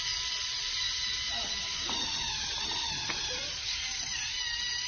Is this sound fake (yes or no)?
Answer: no